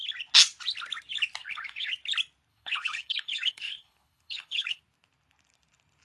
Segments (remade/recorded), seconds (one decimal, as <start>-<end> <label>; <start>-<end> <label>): 0.0-1.4 recorded; 1.4-1.9 remade; 1.9-2.5 recorded; 2.5-4.8 remade; 4.8-6.0 recorded

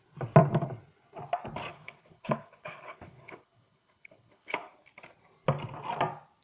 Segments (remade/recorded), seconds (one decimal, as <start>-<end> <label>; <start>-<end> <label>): 0.0-1.7 recorded; 1.7-4.7 remade; 4.7-6.4 recorded

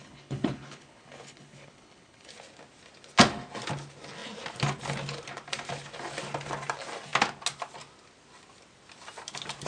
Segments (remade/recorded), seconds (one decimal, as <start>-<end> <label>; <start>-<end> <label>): 0.0-2.3 remade; 2.3-9.7 recorded

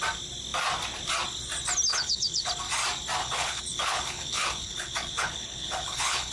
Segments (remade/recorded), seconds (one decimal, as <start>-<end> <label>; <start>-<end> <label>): 0.0-1.9 recorded; 1.9-2.5 remade; 2.5-3.2 recorded; 3.2-6.3 remade

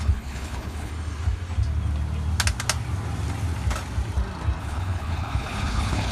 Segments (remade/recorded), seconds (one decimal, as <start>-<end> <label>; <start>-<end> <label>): 0.0-0.9 remade; 0.9-4.6 recorded; 4.6-6.1 remade

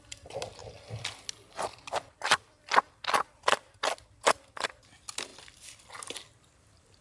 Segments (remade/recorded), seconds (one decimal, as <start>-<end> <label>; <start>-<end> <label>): 0.0-7.0 recorded

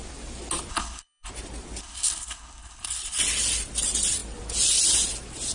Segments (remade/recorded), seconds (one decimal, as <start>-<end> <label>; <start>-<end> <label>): 0.0-0.7 recorded; 0.7-1.3 remade; 1.3-1.8 recorded; 1.8-3.2 remade; 3.2-5.5 recorded

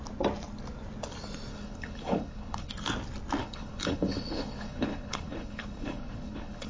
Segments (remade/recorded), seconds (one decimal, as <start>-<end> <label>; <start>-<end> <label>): 0.0-1.5 recorded; 1.5-2.7 remade; 2.7-3.4 recorded; 3.4-6.7 remade